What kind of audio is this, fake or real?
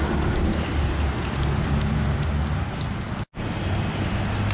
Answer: real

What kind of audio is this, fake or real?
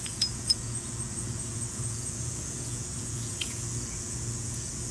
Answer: fake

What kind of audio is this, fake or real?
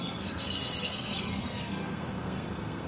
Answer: fake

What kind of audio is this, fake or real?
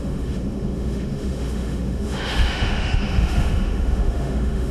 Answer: fake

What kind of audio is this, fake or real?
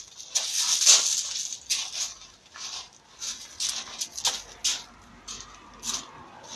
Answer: real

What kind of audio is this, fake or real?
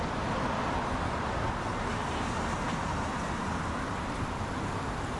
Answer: real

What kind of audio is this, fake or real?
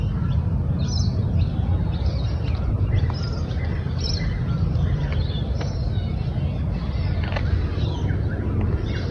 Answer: real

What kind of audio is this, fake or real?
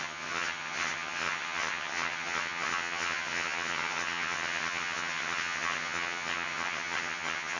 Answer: fake